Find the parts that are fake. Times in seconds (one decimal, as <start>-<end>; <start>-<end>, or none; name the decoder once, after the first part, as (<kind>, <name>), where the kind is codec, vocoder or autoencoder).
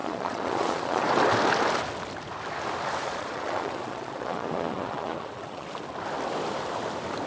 0.0-1.0 (vocoder, Vocos); 3.0-5.7